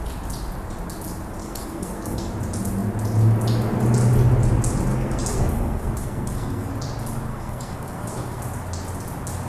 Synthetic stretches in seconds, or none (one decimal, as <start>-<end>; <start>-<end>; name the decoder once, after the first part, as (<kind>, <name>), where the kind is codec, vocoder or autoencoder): 1.4-2.3 (codec, SNAC); 4.9-6.7; 7.3-8.4